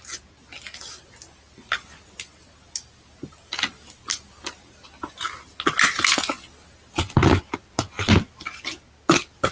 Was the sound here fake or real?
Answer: real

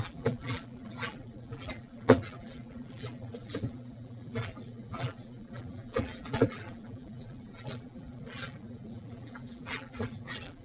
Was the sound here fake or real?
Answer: fake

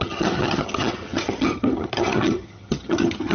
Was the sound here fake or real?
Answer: fake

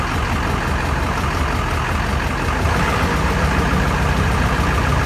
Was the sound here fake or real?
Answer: real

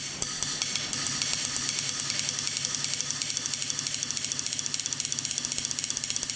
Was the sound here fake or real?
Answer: real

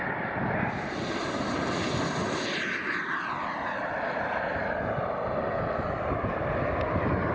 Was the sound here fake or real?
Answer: real